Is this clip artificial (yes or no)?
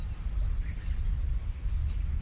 no